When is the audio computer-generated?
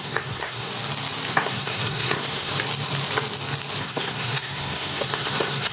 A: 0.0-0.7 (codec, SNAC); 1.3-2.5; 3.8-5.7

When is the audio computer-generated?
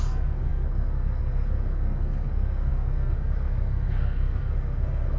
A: 0.0-5.2 (codec, SNAC)